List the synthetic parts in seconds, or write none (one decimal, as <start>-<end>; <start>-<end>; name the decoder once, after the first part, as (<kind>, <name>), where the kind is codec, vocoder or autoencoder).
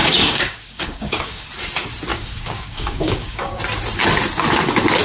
0.0-1.5 (codec, DAC); 2.1-3.6